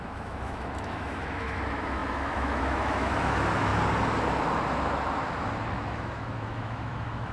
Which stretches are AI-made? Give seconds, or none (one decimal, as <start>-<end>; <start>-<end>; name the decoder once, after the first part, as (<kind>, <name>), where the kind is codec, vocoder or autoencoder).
0.0-3.7 (autoencoder, DAC-VAE); 5.7-7.3